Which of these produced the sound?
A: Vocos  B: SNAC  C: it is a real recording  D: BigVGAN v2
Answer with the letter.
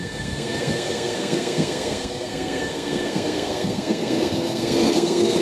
B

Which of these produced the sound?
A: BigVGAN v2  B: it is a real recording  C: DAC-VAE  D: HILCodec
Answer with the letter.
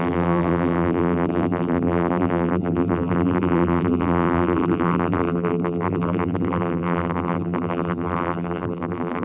A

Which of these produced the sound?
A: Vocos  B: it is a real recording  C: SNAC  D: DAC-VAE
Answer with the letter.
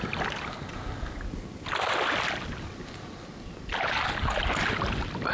B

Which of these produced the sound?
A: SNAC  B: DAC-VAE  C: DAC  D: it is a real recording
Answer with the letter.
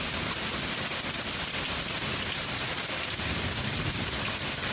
D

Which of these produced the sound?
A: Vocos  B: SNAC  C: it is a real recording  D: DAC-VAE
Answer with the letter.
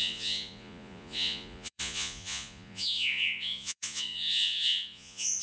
A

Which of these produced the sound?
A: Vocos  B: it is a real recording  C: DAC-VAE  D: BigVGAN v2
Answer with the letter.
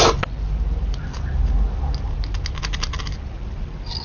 B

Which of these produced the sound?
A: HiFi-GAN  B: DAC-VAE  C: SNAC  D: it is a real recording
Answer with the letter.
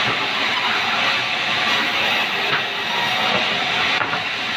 D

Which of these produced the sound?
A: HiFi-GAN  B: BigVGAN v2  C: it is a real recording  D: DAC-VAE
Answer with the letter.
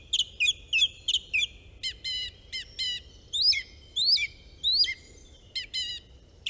C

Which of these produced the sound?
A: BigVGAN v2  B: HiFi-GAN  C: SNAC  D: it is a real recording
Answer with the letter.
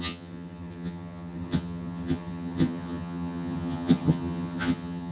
B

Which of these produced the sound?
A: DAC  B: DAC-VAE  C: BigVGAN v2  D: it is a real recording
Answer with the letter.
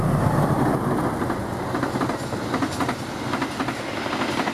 D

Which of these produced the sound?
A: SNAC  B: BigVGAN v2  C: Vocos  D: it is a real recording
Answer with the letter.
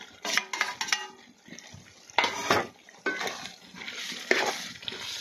D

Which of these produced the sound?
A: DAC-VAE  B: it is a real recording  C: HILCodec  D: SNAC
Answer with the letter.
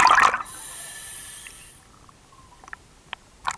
B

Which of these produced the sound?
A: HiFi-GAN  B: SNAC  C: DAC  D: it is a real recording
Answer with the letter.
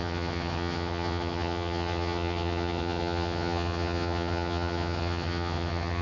A